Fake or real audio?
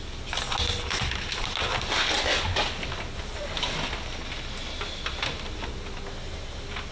real